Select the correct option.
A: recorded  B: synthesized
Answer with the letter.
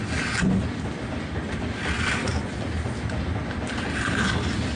A